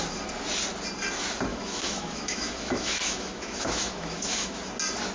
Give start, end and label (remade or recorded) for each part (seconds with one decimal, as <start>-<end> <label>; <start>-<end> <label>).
0.0-1.5 recorded; 1.5-4.6 remade; 4.6-5.1 recorded